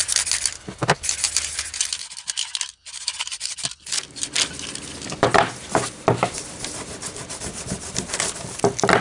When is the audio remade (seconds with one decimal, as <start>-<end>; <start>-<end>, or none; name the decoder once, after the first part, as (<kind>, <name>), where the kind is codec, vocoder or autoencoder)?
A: 3.3-4.5 (vocoder, BigVGAN v2)